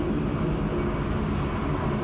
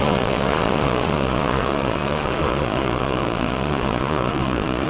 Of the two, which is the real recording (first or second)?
first